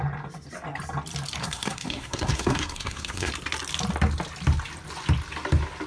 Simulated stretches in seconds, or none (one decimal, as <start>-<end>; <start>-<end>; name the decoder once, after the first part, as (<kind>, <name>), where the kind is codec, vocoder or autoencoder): 1.4-3.3 (codec, SNAC)